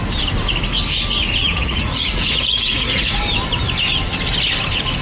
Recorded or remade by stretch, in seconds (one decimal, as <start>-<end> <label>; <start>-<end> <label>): 0.0-1.4 recorded; 1.4-3.2 remade; 3.2-5.0 recorded